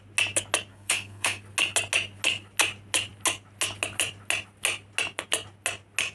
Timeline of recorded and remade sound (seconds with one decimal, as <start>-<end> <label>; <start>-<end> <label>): 0.0-0.7 recorded; 0.7-1.4 remade; 1.4-6.1 recorded